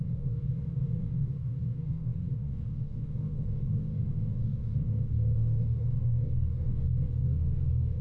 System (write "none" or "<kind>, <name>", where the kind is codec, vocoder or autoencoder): codec, DAC